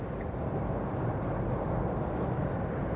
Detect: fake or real real